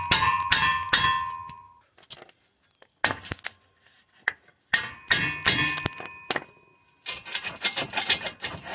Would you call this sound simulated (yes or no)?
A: no